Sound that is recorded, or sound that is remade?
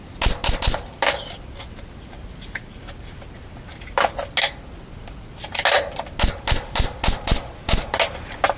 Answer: recorded